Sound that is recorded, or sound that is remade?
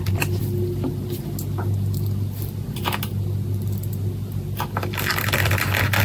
recorded